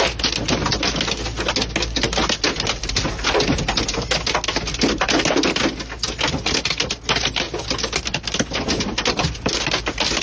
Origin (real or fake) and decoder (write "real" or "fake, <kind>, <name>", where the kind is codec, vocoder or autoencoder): real